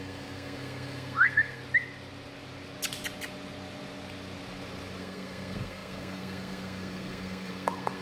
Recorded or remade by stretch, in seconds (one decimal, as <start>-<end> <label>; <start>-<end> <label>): 0.0-1.6 remade; 1.6-5.0 recorded; 5.0-8.0 remade